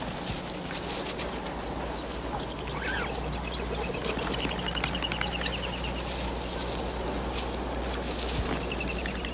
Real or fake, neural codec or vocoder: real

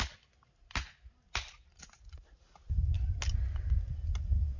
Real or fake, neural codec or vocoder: real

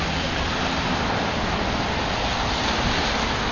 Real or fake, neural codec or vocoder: real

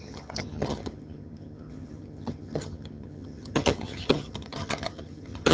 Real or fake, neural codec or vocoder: fake, vocoder, HiFi-GAN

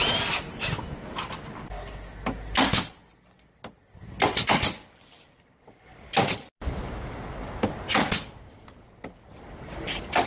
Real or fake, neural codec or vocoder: real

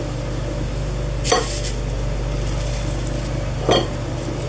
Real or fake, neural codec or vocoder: real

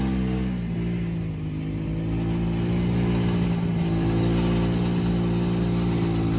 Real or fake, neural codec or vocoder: real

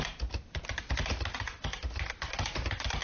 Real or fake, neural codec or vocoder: real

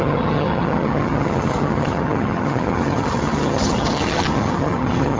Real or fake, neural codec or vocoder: fake, vocoder, HiFi-GAN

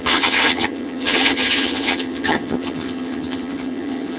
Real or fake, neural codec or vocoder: fake, vocoder, HiFi-GAN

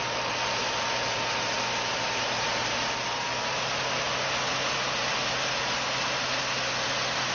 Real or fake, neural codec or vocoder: real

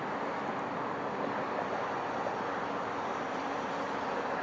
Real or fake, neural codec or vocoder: real